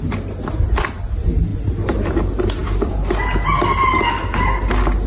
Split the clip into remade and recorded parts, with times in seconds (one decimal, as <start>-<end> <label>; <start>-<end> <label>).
0.0-5.1 recorded